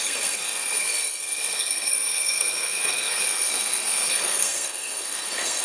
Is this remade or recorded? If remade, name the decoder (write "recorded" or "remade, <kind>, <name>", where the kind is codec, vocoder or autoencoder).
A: remade, codec, SNAC